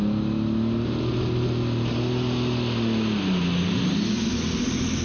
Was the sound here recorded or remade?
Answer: recorded